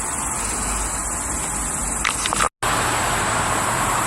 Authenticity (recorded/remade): recorded